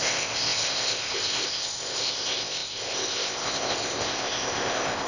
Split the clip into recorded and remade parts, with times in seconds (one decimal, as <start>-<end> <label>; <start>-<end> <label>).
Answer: 0.0-5.1 remade